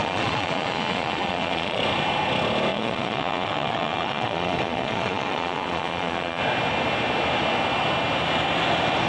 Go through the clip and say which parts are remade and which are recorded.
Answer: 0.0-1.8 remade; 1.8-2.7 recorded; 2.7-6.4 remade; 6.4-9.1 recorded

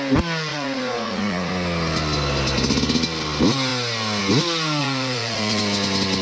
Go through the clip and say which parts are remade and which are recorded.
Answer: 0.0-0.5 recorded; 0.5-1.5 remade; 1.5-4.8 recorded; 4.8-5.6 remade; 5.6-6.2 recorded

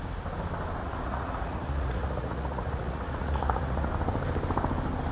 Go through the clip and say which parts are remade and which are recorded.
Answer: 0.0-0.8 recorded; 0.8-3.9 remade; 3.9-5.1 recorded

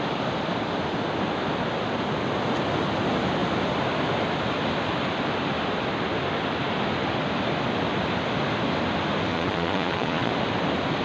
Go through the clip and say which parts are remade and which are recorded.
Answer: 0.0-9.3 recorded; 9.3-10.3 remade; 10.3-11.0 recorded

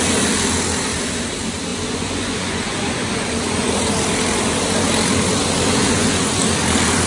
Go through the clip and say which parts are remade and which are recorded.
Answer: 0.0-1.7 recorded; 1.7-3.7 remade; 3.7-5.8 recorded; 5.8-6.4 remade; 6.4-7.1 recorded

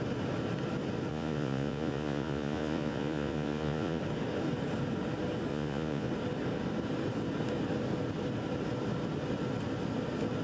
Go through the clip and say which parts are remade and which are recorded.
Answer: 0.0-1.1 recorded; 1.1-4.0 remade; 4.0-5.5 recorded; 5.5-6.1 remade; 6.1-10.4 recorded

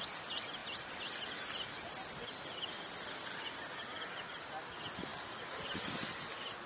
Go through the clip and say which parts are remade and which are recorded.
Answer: 0.0-6.7 recorded

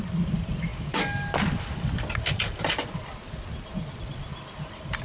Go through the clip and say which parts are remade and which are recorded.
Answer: 0.0-5.0 recorded